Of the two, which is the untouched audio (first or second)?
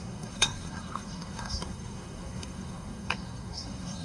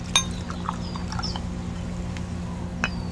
second